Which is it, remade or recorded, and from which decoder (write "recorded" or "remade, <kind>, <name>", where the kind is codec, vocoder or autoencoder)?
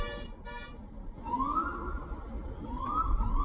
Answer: recorded